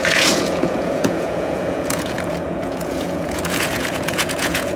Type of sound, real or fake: fake